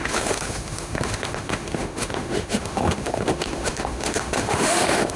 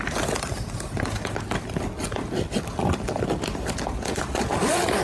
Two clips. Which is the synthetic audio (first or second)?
first